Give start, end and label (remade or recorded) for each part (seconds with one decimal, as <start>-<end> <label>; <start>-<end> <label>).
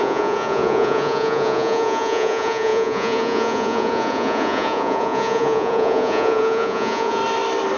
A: 0.0-7.2 remade; 7.2-7.8 recorded